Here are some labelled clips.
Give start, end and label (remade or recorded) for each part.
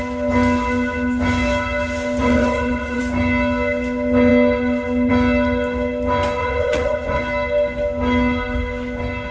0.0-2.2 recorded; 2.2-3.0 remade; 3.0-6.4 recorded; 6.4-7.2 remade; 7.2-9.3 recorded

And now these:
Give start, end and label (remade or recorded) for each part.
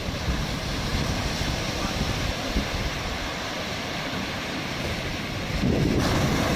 0.0-0.9 remade; 0.9-3.1 recorded; 3.1-5.1 remade; 5.1-6.0 recorded; 6.0-6.6 remade